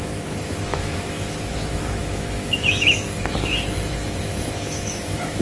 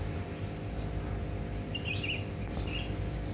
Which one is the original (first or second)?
second